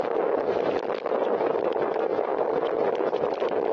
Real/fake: fake